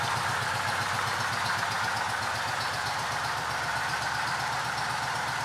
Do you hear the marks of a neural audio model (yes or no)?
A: no